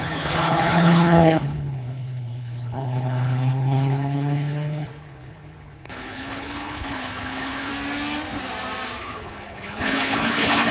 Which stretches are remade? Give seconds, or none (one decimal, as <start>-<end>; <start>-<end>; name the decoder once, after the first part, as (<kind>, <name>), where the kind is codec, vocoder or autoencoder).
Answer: 0.0-7.7 (codec, HILCodec); 9.0-10.7